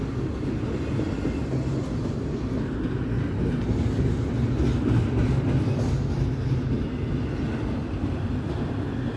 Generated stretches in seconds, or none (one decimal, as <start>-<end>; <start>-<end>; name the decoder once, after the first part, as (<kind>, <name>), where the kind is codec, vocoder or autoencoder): none